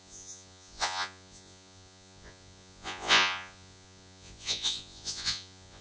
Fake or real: fake